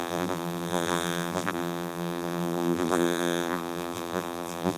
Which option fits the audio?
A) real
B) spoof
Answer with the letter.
B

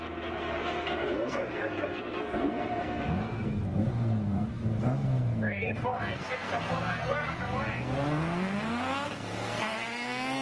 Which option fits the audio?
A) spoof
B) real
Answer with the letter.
A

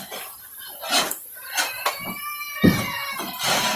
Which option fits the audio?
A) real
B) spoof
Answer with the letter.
B